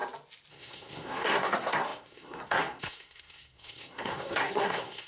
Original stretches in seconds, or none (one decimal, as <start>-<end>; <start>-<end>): 0.0-0.5